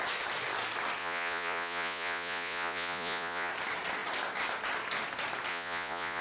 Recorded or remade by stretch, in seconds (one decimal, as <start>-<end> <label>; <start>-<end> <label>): 0.0-1.0 recorded; 1.0-3.5 remade; 3.5-5.5 recorded; 5.5-6.2 remade